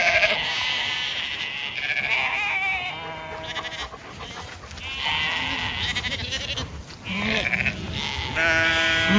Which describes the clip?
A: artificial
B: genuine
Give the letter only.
B